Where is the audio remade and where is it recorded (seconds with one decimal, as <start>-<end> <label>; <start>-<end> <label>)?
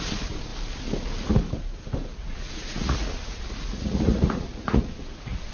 0.0-2.1 recorded; 2.1-5.5 remade